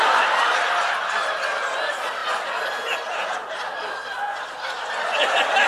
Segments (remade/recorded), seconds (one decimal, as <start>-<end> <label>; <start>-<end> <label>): 0.0-5.7 recorded